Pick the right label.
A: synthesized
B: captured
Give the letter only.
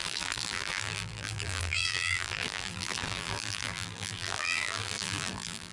A